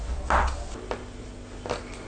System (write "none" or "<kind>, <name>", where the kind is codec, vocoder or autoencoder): none